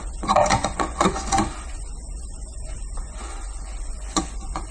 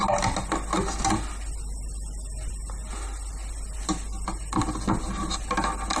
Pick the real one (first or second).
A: second